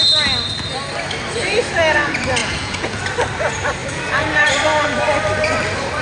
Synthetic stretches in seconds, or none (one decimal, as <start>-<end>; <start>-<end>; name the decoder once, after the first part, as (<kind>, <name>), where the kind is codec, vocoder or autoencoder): 2.4-3.0 (vocoder, Vocos)